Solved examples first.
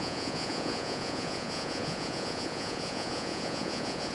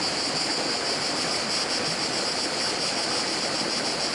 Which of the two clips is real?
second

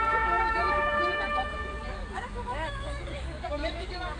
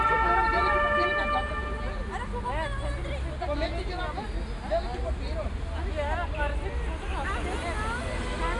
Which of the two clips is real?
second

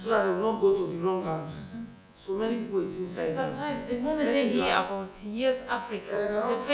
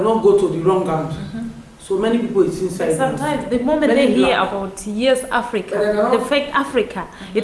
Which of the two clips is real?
second